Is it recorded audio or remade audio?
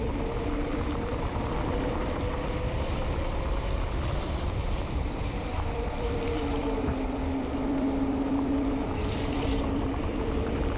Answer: remade